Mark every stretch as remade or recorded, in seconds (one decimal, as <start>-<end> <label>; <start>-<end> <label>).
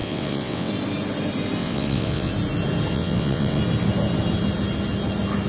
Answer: 0.0-0.7 remade; 0.7-1.6 recorded; 1.6-2.3 remade; 2.3-2.9 recorded; 2.9-3.6 remade; 3.6-5.5 recorded